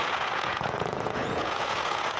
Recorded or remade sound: remade